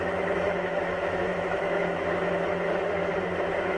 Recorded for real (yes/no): no